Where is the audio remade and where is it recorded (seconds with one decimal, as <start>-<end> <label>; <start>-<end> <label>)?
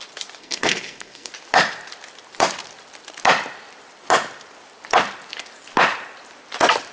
0.0-0.4 recorded; 0.4-1.3 remade; 1.3-6.9 recorded